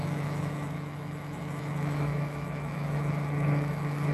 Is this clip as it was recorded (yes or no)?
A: no